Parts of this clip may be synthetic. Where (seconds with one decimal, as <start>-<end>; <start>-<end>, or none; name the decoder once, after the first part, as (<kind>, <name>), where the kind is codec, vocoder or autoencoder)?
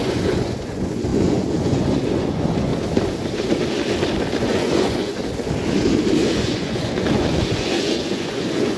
0.0-2.7 (vocoder, Vocos); 4.4-5.2; 6.2-8.8